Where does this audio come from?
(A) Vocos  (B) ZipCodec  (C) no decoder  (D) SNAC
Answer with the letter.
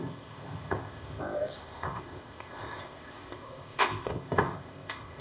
B